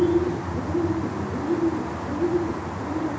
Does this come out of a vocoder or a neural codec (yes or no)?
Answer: no